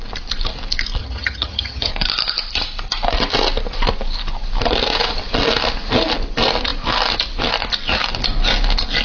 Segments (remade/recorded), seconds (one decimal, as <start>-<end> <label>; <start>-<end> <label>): 0.0-1.0 recorded; 1.0-1.9 remade; 1.9-9.0 recorded